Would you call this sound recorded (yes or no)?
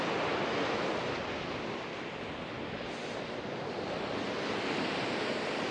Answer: yes